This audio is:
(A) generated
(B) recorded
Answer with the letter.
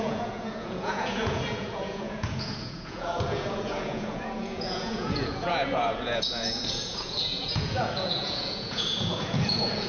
A